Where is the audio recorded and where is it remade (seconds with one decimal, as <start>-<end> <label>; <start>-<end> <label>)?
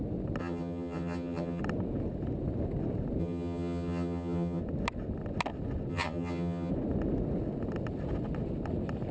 0.0-0.4 recorded; 0.4-1.6 remade; 1.6-3.2 recorded; 3.2-4.6 remade; 4.6-5.9 recorded; 5.9-6.7 remade; 6.7-9.1 recorded